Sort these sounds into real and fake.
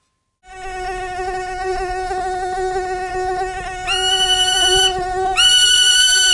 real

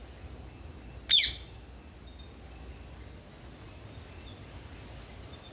real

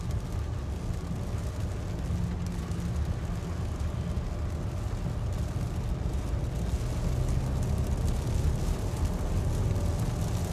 real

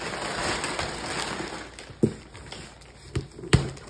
real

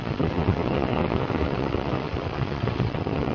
fake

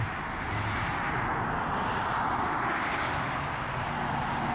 real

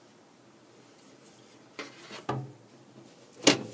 real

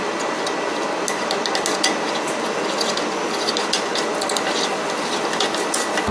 real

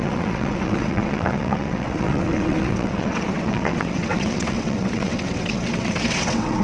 fake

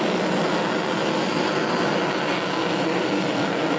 real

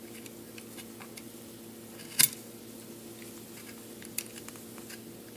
real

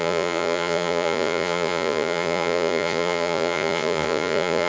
fake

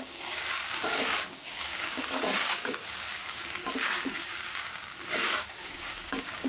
fake